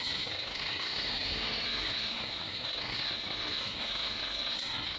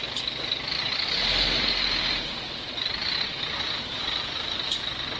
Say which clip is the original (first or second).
second